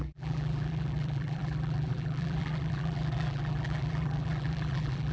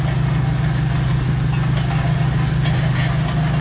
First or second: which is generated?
first